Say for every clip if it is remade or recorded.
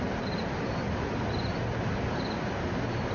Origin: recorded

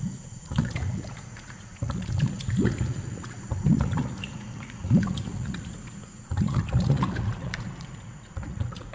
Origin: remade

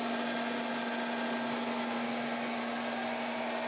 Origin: recorded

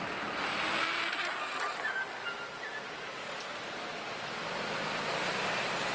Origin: recorded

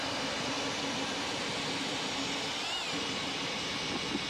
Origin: recorded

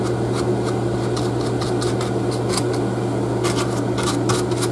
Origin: recorded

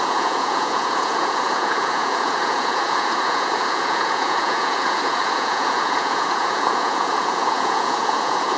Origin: remade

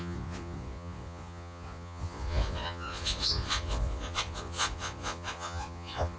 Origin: remade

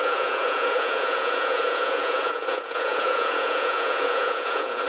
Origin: remade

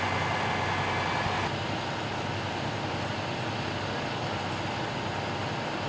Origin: recorded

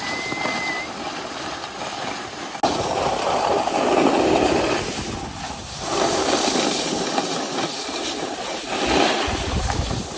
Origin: recorded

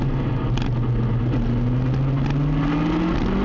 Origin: recorded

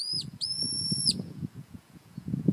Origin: remade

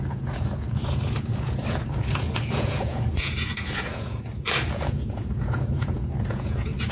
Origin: remade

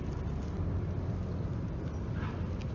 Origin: recorded